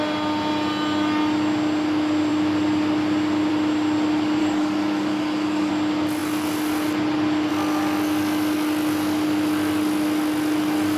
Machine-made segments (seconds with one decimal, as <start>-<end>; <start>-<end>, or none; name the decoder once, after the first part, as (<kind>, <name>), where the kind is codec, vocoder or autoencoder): 4.4-5.7 (codec, DAC)